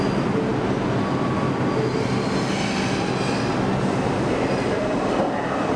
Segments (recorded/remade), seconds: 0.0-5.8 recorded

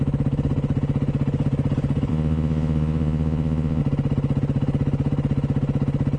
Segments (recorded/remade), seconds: 0.0-2.1 recorded; 2.1-3.8 remade; 3.8-6.2 recorded

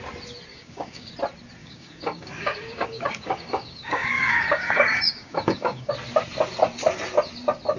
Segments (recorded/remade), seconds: 0.0-0.5 recorded; 0.5-1.1 remade; 1.1-1.6 recorded; 1.6-5.9 remade; 5.9-7.8 recorded

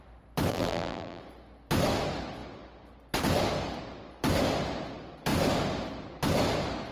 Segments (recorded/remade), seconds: 0.0-0.5 recorded; 0.5-1.2 remade; 1.2-6.9 recorded

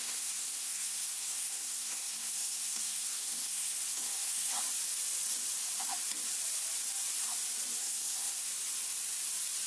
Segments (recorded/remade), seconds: 0.0-4.5 remade; 4.5-7.8 recorded; 7.8-8.5 remade; 8.5-9.7 recorded

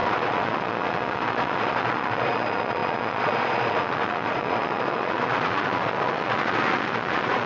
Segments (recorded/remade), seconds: 0.0-7.5 remade